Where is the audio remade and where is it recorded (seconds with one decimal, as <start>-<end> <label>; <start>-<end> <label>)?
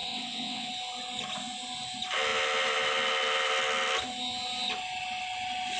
0.0-0.7 remade; 0.7-5.8 recorded